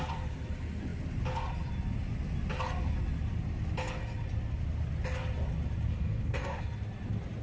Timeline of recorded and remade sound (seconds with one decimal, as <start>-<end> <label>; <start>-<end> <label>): 0.0-5.9 recorded; 5.9-6.6 remade; 6.6-7.4 recorded